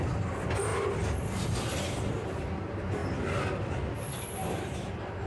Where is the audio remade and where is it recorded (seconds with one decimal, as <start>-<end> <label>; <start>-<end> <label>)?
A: 0.0-5.3 recorded

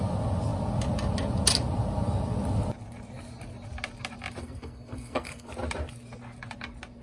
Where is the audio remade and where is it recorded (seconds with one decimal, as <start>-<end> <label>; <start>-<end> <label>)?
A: 0.0-4.4 recorded; 4.4-5.5 remade; 5.5-7.0 recorded

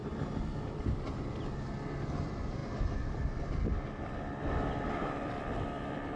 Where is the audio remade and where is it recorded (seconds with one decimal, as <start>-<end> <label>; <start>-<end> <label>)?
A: 0.0-2.6 remade; 2.6-4.9 recorded; 4.9-6.2 remade